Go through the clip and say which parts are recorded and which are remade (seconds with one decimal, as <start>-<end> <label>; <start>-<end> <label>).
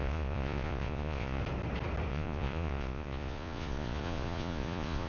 0.0-1.4 remade; 1.4-2.1 recorded; 2.1-5.1 remade